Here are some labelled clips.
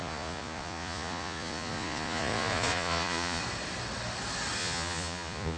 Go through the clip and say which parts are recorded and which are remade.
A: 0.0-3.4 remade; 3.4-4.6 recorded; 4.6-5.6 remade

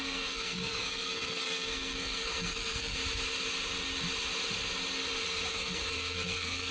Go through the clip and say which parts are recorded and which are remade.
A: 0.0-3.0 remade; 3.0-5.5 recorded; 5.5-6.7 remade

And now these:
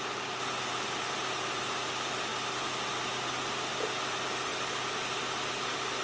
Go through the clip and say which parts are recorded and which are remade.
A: 0.0-6.0 recorded